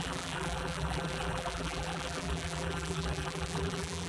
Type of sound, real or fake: fake